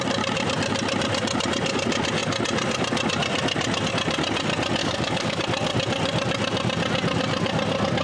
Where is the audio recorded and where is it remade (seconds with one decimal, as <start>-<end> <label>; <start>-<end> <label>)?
0.0-4.8 recorded; 4.8-5.4 remade; 5.4-8.0 recorded